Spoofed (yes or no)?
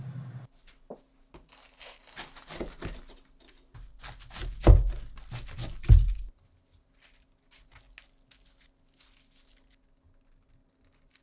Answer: no